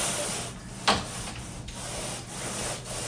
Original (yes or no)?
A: yes